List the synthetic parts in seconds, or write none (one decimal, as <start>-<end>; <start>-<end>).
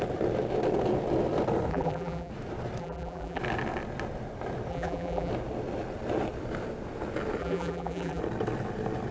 1.7-2.3; 2.8-3.4; 4.7-5.3; 7.4-8.2